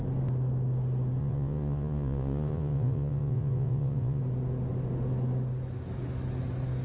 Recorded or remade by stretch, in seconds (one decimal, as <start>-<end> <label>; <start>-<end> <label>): 0.0-1.2 recorded; 1.2-4.2 remade; 4.2-6.8 recorded